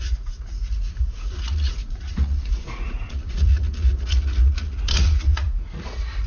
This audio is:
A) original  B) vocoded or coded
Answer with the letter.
B